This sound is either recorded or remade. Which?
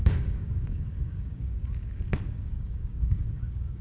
remade